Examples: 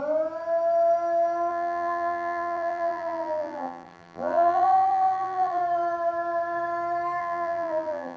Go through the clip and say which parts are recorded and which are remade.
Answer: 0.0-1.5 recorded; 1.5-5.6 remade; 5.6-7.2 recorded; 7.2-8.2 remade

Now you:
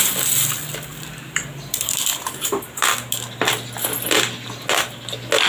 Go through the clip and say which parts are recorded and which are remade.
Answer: 0.0-2.1 remade; 2.1-5.5 recorded

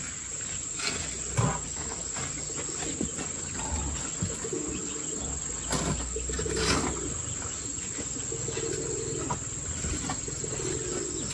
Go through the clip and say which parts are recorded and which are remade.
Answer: 0.0-11.3 recorded

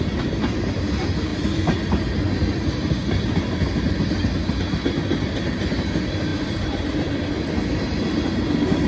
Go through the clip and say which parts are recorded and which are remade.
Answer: 0.0-8.9 recorded

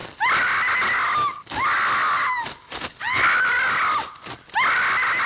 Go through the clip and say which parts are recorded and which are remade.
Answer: 0.0-5.3 recorded

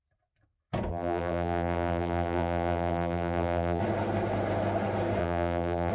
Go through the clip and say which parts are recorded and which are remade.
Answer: 0.0-0.9 recorded; 0.9-3.8 remade; 3.8-5.2 recorded; 5.2-5.9 remade